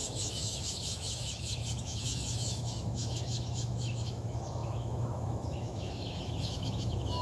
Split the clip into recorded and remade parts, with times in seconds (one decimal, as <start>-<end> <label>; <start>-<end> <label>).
0.0-7.2 remade